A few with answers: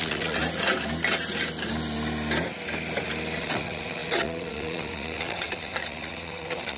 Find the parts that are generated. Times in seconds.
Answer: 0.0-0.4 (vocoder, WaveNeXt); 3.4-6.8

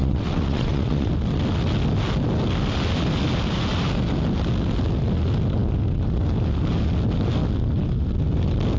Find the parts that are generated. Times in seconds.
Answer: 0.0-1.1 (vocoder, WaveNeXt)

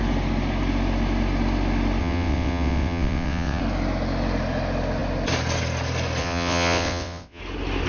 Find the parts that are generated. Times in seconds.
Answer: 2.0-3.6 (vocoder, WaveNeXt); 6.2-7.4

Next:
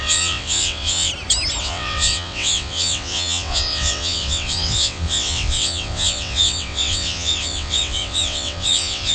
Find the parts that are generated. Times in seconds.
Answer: 0.0-1.1 (vocoder, WaveNeXt); 1.6-9.1